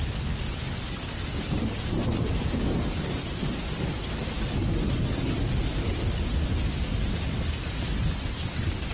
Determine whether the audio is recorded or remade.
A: recorded